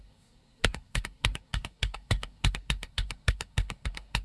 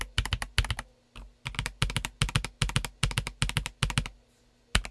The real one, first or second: second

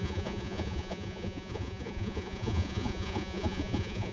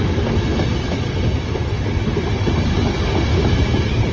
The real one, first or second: second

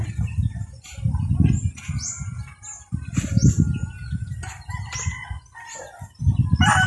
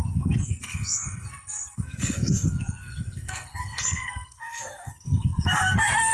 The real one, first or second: first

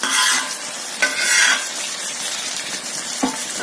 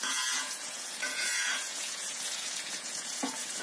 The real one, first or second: first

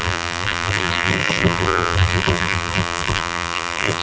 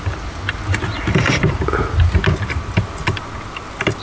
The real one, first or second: second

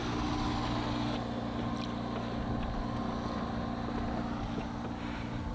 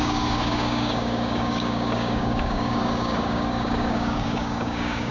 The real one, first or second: first